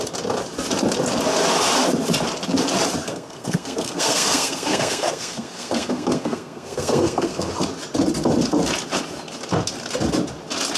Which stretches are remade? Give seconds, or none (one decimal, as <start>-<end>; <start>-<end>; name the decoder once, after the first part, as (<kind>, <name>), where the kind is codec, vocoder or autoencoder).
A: 3.1-7.5 (codec, SNAC)